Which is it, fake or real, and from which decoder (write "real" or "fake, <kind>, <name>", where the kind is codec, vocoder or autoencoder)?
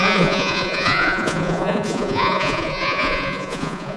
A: fake, vocoder, Vocos